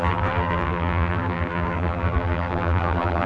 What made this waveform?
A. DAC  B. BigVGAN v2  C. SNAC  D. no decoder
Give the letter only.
B